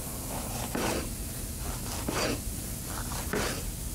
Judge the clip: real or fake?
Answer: real